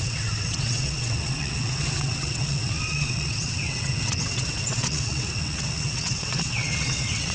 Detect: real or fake fake